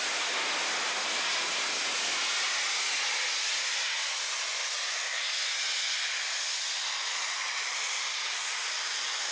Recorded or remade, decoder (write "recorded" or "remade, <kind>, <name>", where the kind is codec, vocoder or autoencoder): recorded